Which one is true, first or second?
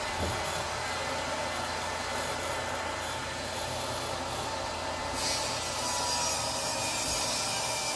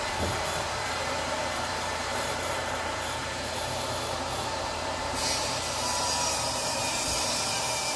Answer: first